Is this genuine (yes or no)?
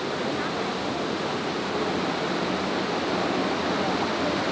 yes